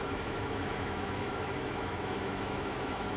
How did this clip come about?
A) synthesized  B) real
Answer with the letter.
A